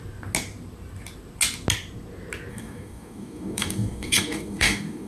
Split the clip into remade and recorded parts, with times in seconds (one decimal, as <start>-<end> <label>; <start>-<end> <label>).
0.0-2.5 recorded; 2.5-5.1 remade